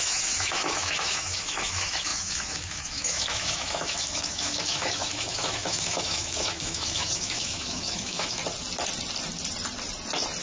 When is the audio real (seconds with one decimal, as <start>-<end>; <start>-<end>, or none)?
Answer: 8.4-10.4